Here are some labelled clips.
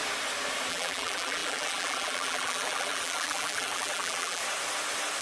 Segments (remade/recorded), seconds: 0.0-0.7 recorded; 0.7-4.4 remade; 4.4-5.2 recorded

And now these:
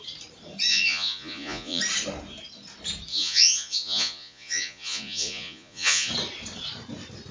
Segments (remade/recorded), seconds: 0.0-0.7 recorded; 0.7-1.8 remade; 1.8-3.1 recorded; 3.1-6.1 remade; 6.1-7.3 recorded

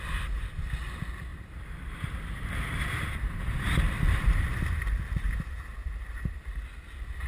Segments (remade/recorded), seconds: 0.0-1.3 recorded; 1.3-4.5 remade; 4.5-7.3 recorded